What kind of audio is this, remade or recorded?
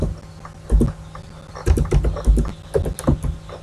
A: recorded